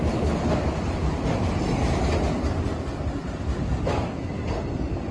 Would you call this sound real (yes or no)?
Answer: yes